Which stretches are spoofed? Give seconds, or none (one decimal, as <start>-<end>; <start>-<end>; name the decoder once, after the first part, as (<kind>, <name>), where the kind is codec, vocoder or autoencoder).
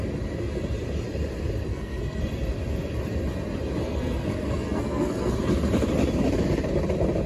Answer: 1.7-2.2 (codec, SNAC); 3.8-5.3